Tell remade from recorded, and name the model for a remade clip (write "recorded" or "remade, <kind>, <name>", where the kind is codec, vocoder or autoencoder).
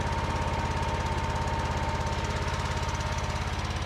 recorded